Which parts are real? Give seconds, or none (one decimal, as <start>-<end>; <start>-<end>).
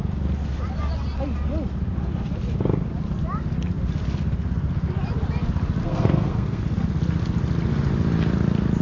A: 0.0-5.8; 6.6-8.8